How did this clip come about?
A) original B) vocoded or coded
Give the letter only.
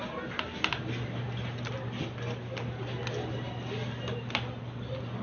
A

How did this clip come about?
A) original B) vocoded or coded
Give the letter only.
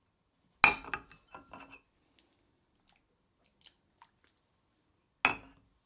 A